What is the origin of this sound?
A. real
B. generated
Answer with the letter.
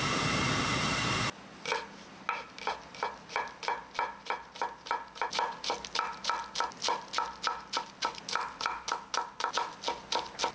A